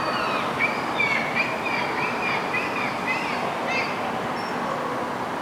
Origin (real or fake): real